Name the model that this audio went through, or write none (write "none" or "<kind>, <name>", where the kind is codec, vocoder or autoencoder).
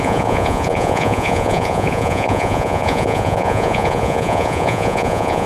vocoder, Vocos